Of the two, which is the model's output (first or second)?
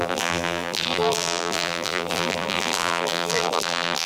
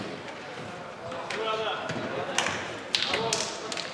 first